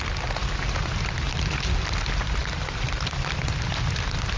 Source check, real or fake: real